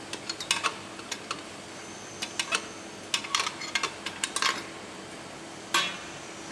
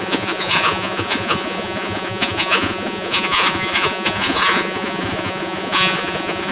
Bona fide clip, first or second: first